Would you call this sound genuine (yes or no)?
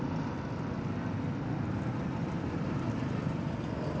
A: yes